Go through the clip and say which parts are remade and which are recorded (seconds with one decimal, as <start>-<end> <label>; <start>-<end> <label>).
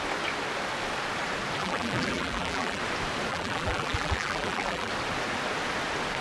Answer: 0.0-1.6 recorded; 1.6-2.8 remade; 2.8-3.3 recorded; 3.3-4.9 remade; 4.9-6.2 recorded